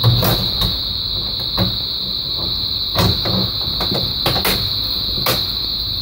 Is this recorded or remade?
recorded